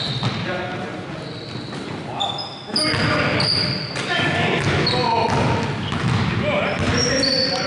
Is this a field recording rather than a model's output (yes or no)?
yes